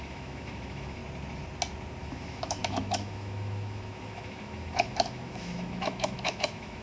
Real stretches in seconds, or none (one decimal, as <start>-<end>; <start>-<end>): 1.0-2.0